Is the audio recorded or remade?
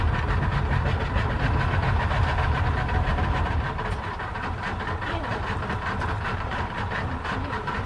remade